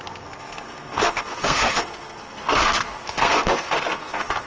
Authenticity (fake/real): fake